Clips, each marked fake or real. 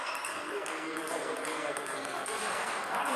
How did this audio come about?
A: fake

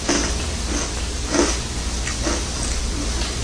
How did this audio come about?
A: real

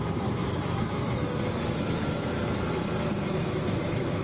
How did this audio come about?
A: fake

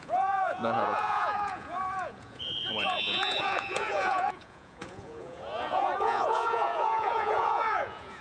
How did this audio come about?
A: fake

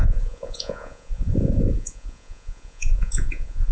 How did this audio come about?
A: fake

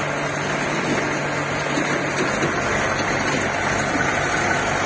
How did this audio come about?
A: real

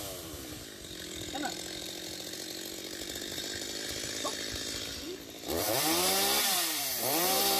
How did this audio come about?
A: fake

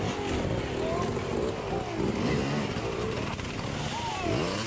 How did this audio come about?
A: real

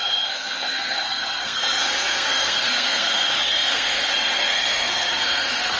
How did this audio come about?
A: fake